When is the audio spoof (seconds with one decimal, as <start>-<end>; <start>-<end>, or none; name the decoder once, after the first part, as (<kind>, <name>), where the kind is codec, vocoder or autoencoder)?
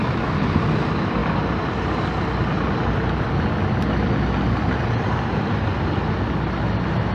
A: 0.0-0.6 (autoencoder, DAC-VAE)